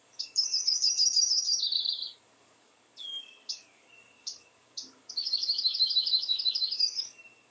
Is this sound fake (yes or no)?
yes